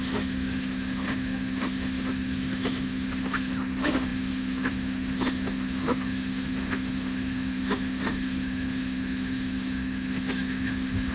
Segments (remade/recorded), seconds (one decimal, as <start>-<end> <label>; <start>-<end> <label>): 0.0-11.1 remade